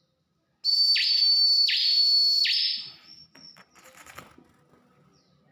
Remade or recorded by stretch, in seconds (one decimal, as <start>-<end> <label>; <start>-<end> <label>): 0.0-5.5 recorded